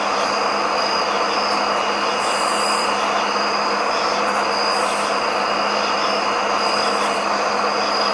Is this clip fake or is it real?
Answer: real